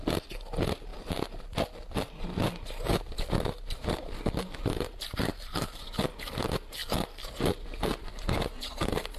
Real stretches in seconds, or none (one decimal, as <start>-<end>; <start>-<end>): 0.0-9.2